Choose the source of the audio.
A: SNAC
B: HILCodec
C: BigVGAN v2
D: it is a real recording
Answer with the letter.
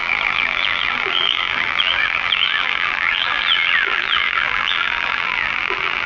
C